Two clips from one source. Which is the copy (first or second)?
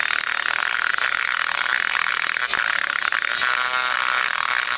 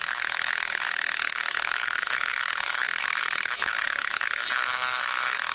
second